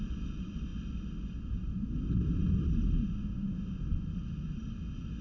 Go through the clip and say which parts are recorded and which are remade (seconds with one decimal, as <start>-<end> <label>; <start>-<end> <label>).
0.0-5.2 recorded